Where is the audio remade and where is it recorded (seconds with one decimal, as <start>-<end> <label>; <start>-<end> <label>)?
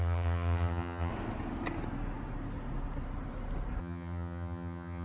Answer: 0.0-1.1 remade; 1.1-3.8 recorded; 3.8-5.0 remade